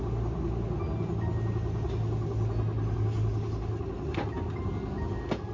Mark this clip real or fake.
real